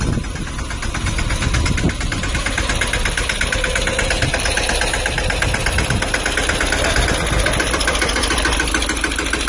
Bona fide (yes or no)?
yes